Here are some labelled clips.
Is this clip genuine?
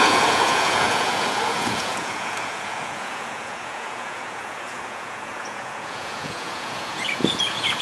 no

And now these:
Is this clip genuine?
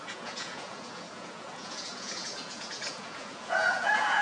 no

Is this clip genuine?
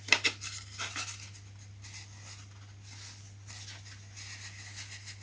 yes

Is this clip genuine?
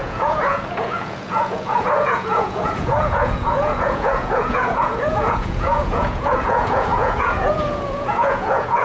no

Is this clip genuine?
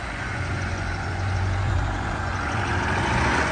no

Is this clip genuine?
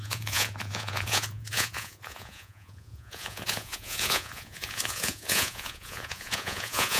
no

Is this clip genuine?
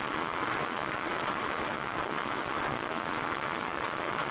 no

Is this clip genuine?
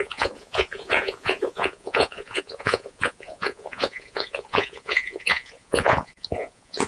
no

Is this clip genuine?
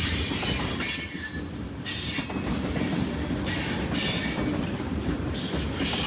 yes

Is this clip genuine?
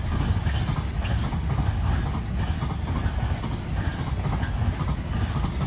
yes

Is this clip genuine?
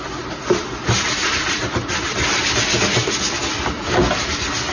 yes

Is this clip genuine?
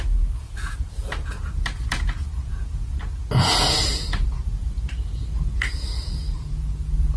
no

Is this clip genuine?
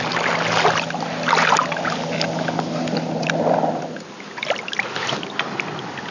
yes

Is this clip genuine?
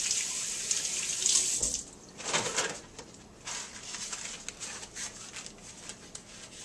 yes